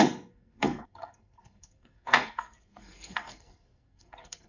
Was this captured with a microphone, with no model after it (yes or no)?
no